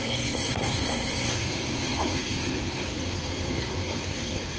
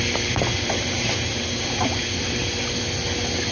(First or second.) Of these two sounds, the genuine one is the second